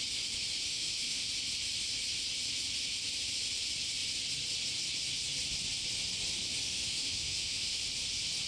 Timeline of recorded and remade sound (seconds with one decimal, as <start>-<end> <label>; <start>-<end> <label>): 0.0-0.7 recorded; 0.7-1.3 remade; 1.3-6.7 recorded; 6.7-7.8 remade; 7.8-8.5 recorded